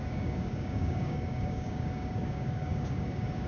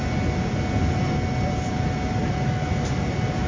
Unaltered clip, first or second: second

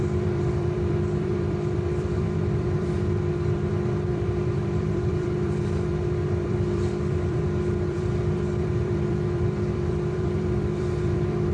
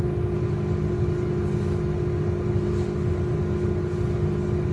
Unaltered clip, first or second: second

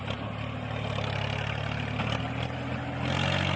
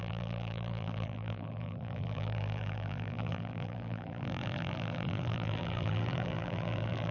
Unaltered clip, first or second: first